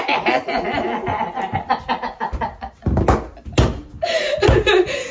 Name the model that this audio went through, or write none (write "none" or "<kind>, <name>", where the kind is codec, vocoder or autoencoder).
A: none